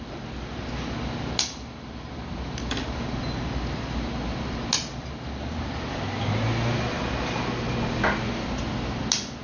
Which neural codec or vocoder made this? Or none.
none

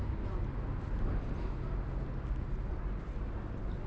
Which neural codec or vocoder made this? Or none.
none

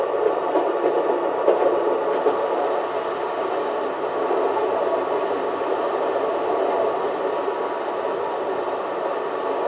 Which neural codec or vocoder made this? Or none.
none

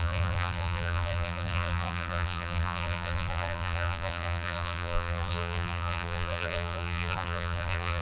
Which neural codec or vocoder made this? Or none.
vocoder, BigVGAN v2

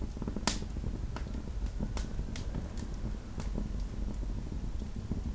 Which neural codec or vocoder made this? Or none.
none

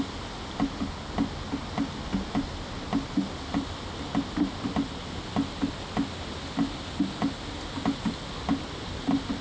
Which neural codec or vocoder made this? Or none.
none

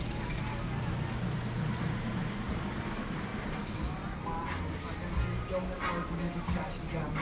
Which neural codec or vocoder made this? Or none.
none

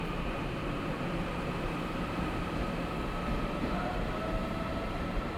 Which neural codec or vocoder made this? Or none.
vocoder, BigVGAN v2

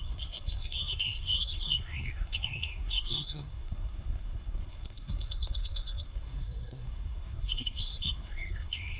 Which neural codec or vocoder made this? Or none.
codec, SNAC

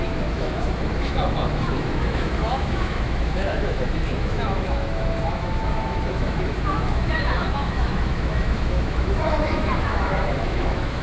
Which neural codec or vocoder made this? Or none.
autoencoder, DAC-VAE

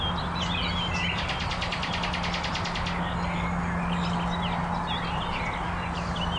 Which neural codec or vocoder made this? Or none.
none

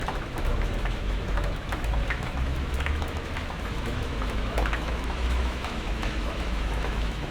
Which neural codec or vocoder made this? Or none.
autoencoder, DAC-VAE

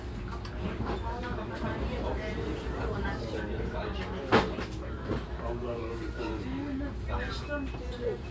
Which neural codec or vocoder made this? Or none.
none